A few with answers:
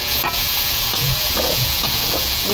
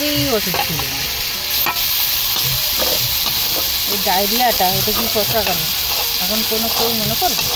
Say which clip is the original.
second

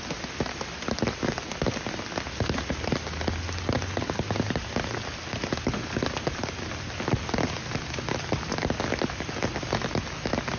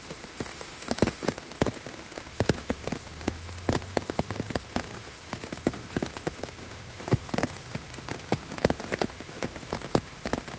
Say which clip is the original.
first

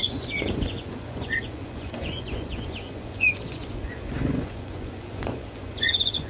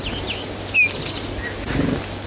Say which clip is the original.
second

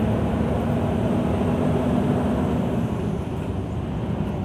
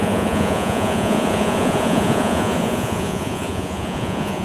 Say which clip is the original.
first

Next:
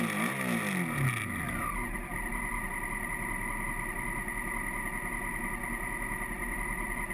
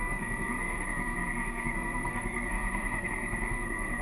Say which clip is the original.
first